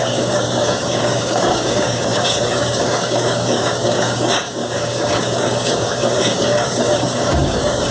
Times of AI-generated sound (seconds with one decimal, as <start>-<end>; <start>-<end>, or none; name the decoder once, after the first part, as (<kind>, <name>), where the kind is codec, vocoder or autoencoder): 0.0-7.9 (codec, DAC)